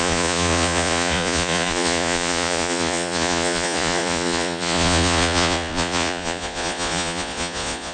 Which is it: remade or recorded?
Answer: remade